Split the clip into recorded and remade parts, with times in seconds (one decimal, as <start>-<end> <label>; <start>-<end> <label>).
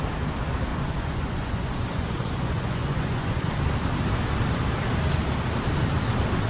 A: 0.0-0.7 recorded; 0.7-3.5 remade; 3.5-6.5 recorded